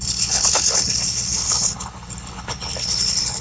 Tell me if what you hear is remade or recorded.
remade